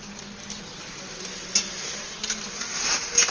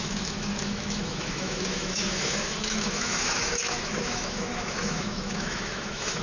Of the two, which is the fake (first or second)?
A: second